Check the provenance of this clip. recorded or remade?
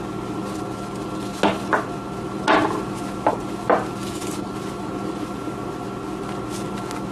recorded